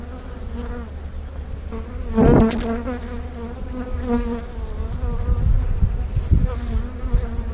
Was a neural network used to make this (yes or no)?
no